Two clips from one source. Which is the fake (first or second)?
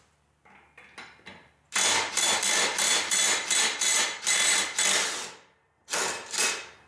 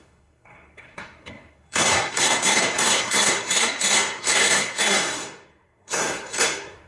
second